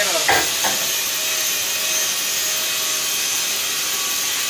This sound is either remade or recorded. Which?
recorded